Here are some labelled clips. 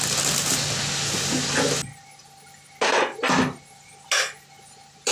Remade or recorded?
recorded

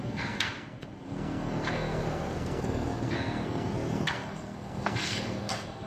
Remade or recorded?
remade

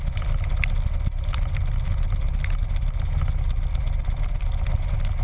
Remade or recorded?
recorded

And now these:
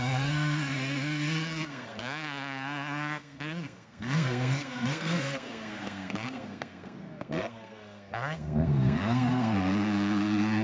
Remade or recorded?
remade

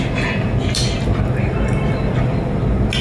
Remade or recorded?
recorded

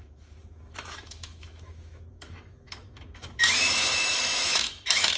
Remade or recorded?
remade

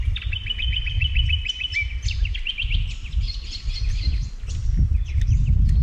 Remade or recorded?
recorded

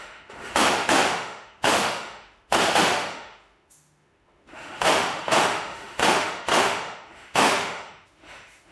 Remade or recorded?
remade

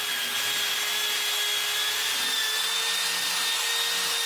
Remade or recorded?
recorded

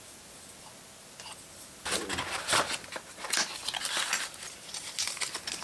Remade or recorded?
recorded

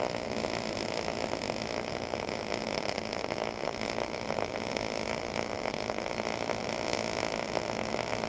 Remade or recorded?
recorded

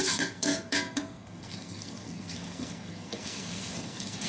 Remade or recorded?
remade